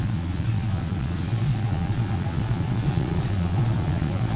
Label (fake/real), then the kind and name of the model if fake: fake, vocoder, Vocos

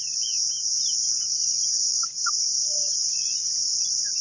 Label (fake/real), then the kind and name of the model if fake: real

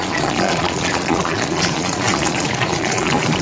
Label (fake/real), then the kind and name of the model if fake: fake, vocoder, Vocos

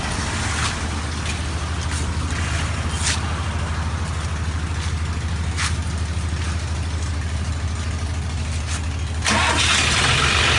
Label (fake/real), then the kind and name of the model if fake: real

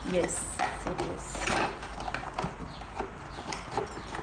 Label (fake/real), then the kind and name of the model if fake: real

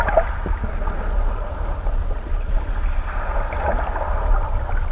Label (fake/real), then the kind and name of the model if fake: real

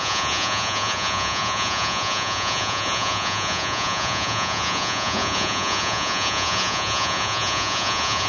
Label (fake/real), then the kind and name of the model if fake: fake, vocoder, Vocos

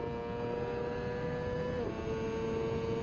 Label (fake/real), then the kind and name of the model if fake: real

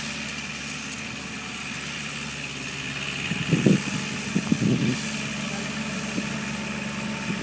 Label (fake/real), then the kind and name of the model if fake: real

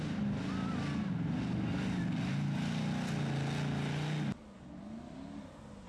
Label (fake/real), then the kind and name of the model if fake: real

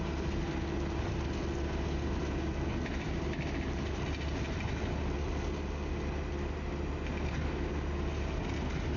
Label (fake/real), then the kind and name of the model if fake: real